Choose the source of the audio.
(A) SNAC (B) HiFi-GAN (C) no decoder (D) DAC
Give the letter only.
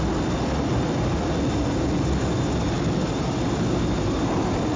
C